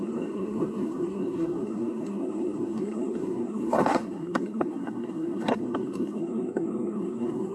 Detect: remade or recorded remade